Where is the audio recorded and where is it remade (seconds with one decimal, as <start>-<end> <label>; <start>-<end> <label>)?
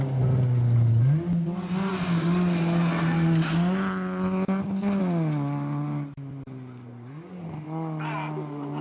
0.0-8.8 recorded